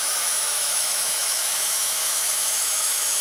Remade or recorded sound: remade